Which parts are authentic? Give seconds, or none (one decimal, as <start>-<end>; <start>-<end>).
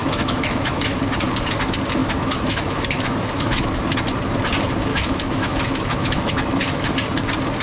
1.0-2.0; 3.6-4.9; 6.9-7.6